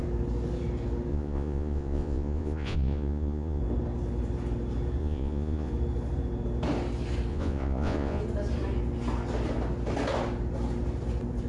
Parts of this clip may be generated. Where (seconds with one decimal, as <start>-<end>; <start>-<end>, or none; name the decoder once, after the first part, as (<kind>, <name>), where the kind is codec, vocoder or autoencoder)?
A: 1.1-3.6 (vocoder, Vocos); 5.0-5.7; 7.3-8.2